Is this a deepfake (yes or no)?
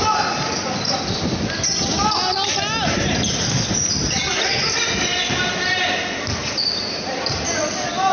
no